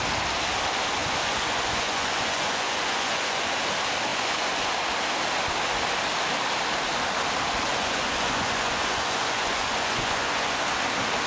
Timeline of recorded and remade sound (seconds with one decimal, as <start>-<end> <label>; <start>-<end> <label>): 0.0-1.0 recorded; 1.0-3.5 remade; 3.5-4.1 recorded; 4.1-4.7 remade; 4.7-7.7 recorded; 7.7-10.6 remade; 10.6-11.3 recorded